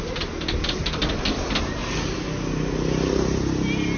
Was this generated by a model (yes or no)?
no